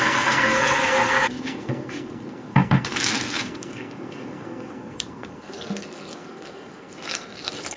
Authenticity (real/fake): fake